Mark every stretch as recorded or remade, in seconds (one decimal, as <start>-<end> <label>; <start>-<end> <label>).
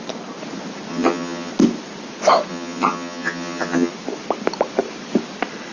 0.0-0.9 recorded; 0.9-1.5 remade; 1.5-2.5 recorded; 2.5-3.9 remade; 3.9-5.7 recorded